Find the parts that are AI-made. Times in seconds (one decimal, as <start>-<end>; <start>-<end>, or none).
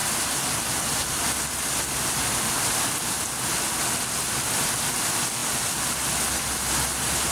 none